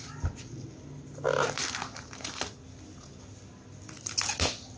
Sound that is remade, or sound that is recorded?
recorded